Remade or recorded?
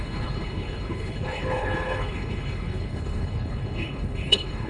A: remade